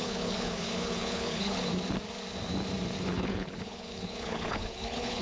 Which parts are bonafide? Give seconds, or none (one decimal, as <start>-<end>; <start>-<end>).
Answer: 1.7-3.0